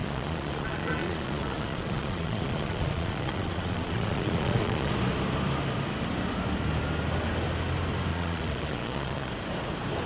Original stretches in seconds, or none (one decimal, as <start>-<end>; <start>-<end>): 4.9-8.1; 9.3-10.1